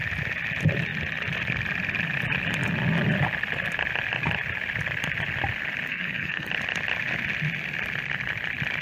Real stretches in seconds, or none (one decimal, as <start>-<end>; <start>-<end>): 0.0-5.9; 6.5-8.8